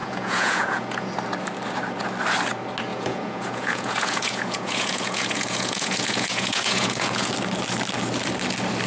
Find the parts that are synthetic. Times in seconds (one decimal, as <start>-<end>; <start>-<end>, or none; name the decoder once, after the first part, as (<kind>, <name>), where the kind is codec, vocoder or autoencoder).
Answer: 0.0-1.1 (vocoder, Vocos); 2.9-7.3